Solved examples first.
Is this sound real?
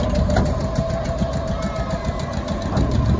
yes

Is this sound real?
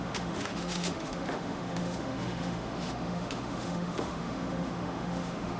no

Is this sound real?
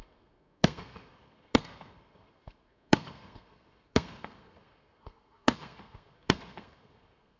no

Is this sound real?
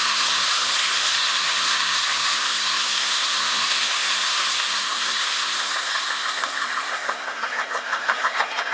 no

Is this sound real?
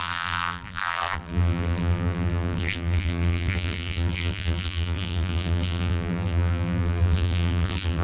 no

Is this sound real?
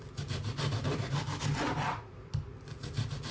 yes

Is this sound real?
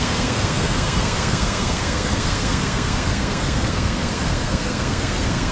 no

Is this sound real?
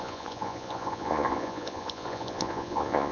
no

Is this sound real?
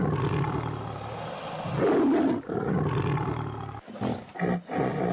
yes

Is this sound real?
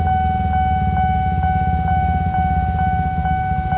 yes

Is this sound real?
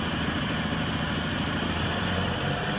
no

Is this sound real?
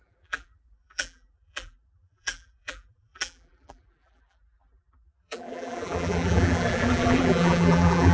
no